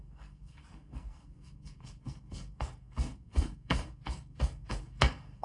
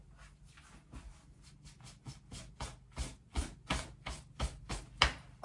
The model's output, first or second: first